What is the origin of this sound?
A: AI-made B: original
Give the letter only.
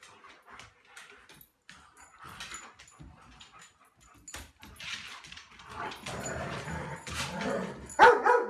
B